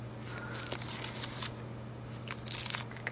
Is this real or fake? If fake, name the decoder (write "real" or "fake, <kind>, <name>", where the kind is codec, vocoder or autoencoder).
real